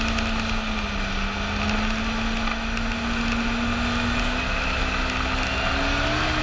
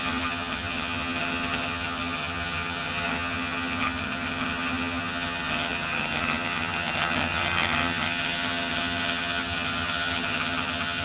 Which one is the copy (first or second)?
second